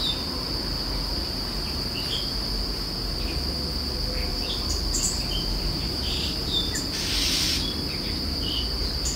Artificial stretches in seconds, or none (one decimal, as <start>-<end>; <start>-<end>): 4.3-6.8